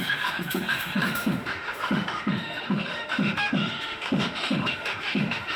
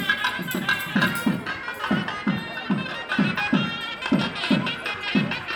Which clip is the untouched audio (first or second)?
second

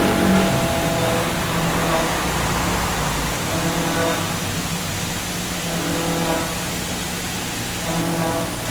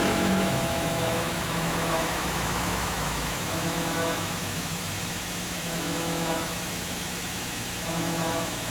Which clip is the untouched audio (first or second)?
first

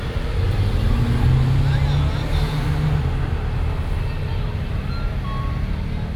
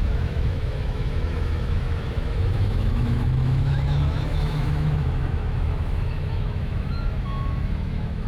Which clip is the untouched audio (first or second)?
first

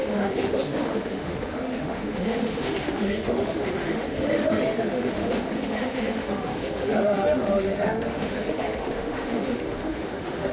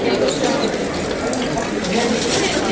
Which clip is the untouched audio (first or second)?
second